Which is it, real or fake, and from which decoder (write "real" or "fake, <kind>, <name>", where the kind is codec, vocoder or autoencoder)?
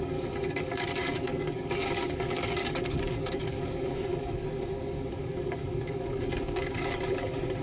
fake, codec, DAC